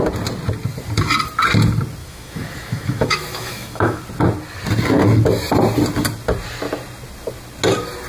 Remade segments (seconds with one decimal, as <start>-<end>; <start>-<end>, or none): 2.0-4.0